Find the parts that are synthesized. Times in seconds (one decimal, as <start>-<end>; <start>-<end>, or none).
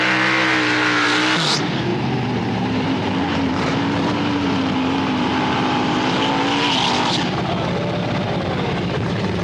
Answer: 1.9-6.2; 8.0-9.4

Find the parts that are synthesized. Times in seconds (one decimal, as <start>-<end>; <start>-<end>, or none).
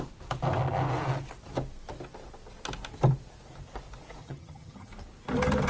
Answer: 4.2-4.9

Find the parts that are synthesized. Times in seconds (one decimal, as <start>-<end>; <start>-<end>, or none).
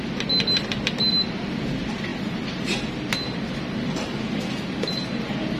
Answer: none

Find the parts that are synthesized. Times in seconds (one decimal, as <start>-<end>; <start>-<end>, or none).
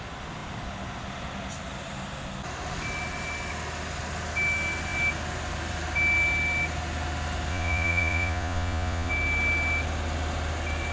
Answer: 7.5-9.1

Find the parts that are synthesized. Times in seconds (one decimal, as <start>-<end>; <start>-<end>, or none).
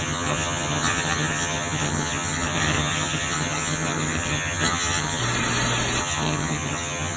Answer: 0.0-5.2; 6.0-7.2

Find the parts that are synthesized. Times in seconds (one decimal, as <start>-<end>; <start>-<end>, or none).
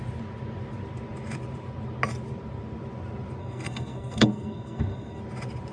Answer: 3.4-5.2